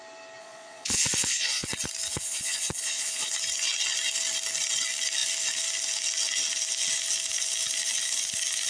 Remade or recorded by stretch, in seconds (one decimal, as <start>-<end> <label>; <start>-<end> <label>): 0.0-0.4 recorded; 0.4-1.7 remade; 1.7-2.1 recorded; 2.1-3.3 remade; 3.3-8.7 recorded